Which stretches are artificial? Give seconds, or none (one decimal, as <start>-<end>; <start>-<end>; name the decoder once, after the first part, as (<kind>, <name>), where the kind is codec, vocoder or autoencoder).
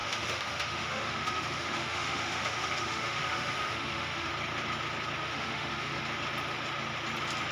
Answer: 0.0-4.3 (autoencoder, DAC-VAE); 5.2-6.0